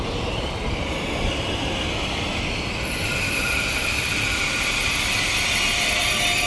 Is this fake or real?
real